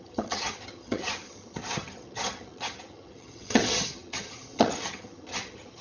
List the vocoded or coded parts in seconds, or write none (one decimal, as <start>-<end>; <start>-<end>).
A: 0.0-5.8